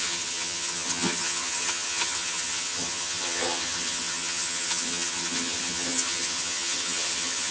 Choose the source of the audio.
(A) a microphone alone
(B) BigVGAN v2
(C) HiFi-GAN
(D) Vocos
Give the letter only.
C